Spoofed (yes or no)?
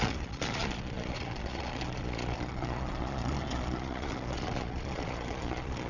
yes